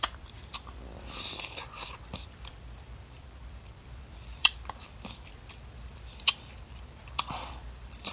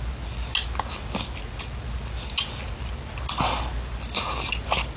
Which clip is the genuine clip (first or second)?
second